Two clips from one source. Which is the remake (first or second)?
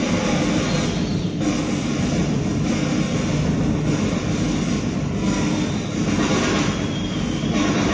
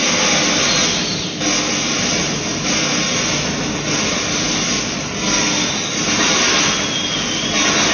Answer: first